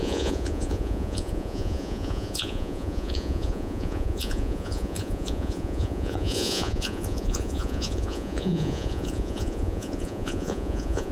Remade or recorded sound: remade